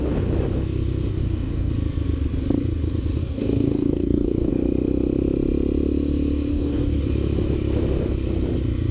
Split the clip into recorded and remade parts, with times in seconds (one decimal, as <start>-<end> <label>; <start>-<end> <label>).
0.0-1.1 recorded; 1.1-1.7 remade; 1.7-3.2 recorded; 3.2-4.5 remade; 4.5-6.5 recorded; 6.5-7.0 remade; 7.0-8.9 recorded